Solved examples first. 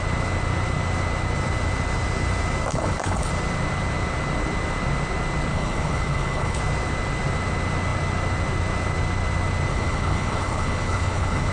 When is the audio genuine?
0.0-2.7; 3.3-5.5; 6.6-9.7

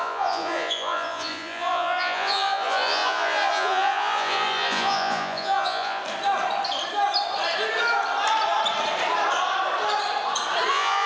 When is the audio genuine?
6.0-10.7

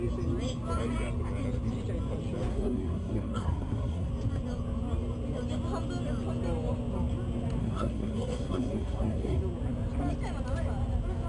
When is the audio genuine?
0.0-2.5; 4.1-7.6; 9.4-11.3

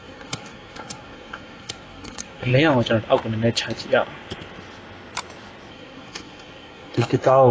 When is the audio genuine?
2.5-5.7

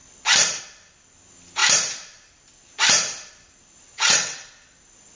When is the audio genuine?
0.0-3.9; 4.5-5.2

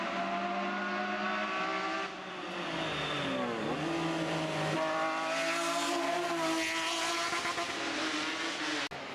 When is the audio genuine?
0.0-9.1